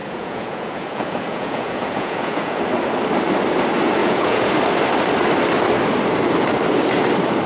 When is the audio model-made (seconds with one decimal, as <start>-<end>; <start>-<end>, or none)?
0.0-2.6; 4.0-4.5

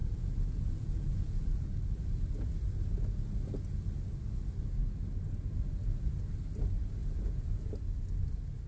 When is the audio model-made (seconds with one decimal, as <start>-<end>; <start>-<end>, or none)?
0.0-1.8; 7.0-7.7

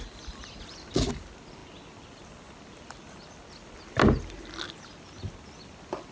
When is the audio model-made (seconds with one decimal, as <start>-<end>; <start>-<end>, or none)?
none

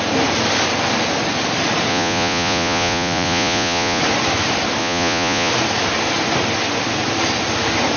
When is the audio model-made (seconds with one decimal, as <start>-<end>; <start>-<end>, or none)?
1.9-4.0; 4.8-5.5

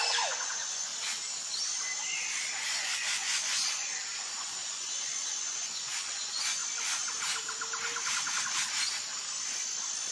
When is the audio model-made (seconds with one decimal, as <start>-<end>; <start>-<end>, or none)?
0.0-0.9; 2.5-6.6

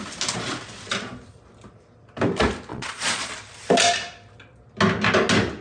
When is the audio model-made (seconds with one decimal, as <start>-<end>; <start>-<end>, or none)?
2.7-3.3

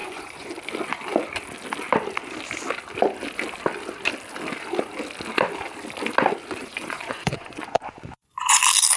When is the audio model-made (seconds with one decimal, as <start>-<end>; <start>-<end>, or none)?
0.0-0.5; 6.6-8.6